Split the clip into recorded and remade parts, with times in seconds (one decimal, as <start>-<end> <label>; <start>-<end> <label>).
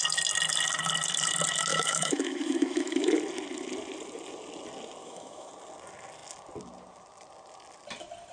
0.0-1.7 recorded; 1.7-3.2 remade; 3.2-5.0 recorded; 5.0-5.5 remade; 5.5-8.3 recorded